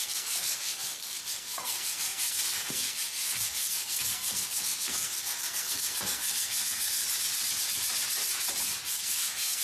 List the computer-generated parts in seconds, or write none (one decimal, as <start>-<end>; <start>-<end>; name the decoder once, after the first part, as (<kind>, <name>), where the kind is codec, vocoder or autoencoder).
0.0-7.0 (codec, SNAC); 8.9-9.6